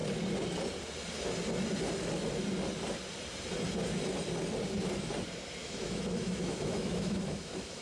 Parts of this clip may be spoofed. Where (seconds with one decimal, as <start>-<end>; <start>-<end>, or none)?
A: 5.6-7.8